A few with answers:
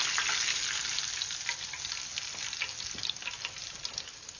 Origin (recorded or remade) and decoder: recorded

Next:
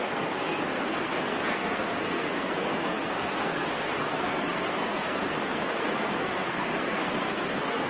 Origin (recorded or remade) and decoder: remade, codec, SNAC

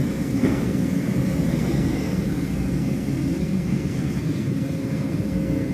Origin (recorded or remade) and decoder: remade, codec, SNAC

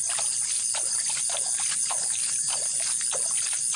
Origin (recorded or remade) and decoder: recorded